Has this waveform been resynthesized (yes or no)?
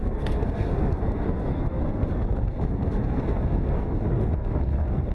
yes